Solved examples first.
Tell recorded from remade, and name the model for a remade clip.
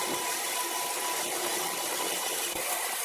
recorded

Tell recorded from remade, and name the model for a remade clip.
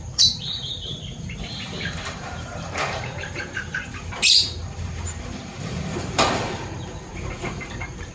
remade, vocoder, BigVGAN v2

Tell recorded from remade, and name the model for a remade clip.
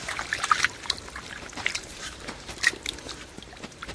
remade, vocoder, BigVGAN v2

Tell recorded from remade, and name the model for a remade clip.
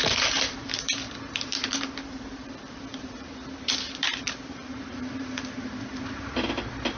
remade, vocoder, BigVGAN v2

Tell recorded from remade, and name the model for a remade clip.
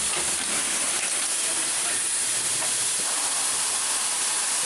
remade, vocoder, BigVGAN v2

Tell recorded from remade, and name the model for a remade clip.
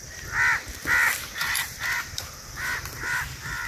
remade, vocoder, BigVGAN v2